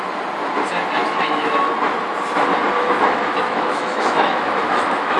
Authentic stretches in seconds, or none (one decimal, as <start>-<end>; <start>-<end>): 0.0-1.0; 1.7-2.8